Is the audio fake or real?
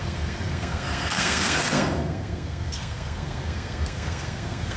fake